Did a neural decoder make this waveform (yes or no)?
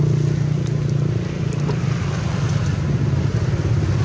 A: no